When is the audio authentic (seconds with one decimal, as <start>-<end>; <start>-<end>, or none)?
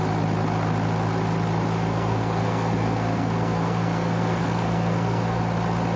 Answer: 0.0-1.8; 5.4-6.0